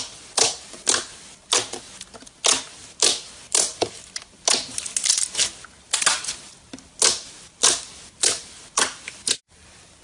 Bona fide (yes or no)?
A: yes